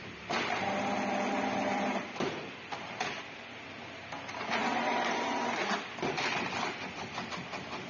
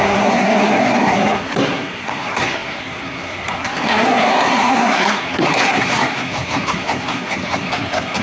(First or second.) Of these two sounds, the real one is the first